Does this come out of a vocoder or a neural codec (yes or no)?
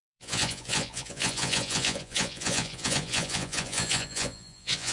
yes